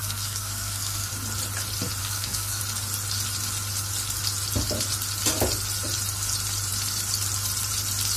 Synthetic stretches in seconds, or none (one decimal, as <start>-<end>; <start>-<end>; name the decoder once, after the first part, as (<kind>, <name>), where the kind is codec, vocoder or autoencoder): 0.0-1.1 (codec, SNAC); 2.0-2.6